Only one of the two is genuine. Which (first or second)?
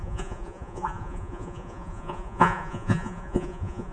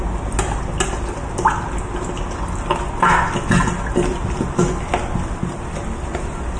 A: second